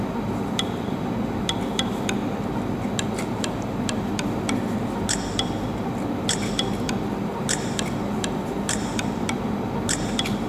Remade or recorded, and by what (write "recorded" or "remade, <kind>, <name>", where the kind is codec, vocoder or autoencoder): recorded